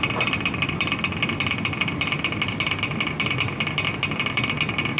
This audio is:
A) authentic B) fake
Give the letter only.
A